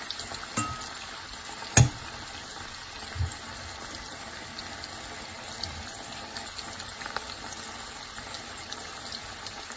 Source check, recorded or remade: recorded